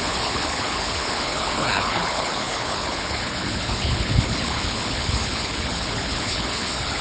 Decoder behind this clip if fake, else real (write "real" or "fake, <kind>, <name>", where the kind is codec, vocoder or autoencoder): fake, codec, HILCodec